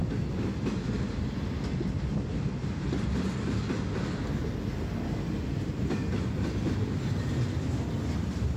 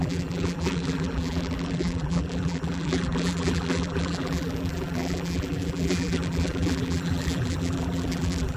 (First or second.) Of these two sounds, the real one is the first